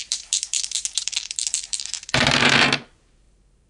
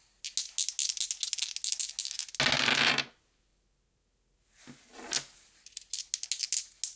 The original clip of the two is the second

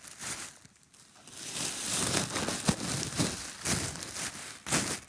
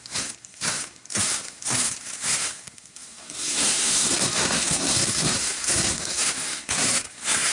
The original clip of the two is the first